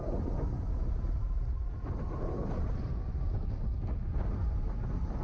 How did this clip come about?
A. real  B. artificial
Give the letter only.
A